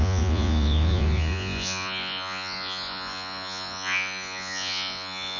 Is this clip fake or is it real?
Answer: fake